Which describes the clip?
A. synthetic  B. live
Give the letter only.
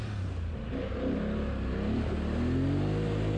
B